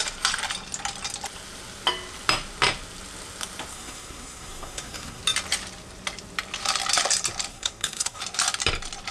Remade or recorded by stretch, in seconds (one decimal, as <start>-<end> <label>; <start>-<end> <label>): 0.0-3.7 recorded; 3.7-5.2 remade; 5.2-7.5 recorded; 7.5-8.2 remade; 8.2-9.1 recorded